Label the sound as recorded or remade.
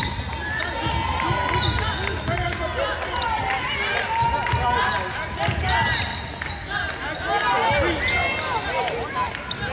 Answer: recorded